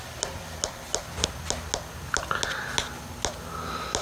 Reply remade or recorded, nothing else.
recorded